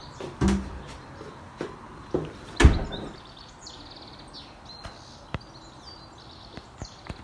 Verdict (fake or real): real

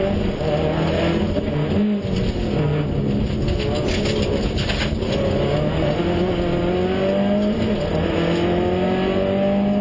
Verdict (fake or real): real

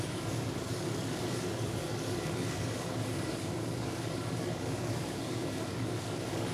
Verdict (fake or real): fake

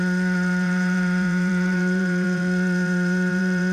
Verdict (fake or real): fake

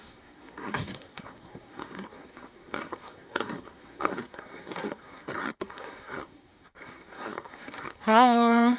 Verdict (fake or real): fake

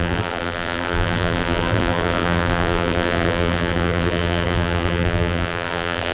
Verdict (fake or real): fake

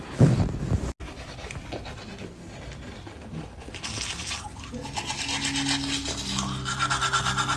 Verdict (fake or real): real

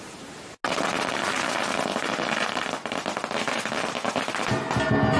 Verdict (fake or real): real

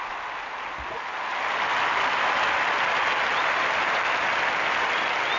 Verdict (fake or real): real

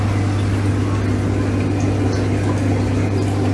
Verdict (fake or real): real